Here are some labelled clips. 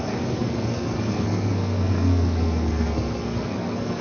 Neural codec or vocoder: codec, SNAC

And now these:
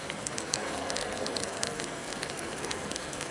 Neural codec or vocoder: codec, SNAC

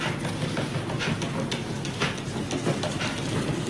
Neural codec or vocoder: none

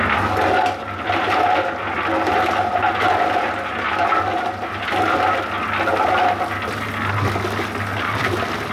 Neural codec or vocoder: none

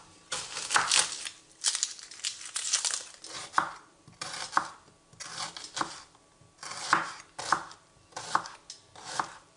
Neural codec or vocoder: none